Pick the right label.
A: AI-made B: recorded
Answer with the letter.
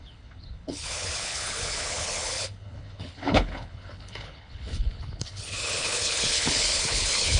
A